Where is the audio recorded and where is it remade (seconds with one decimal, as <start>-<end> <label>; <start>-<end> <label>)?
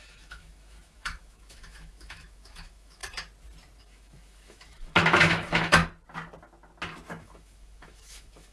0.0-3.0 remade; 3.0-3.8 recorded; 3.8-5.8 remade; 5.8-7.2 recorded; 7.2-8.5 remade